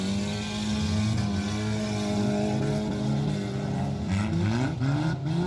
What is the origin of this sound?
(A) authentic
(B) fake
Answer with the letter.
A